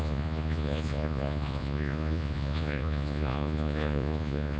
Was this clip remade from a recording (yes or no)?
yes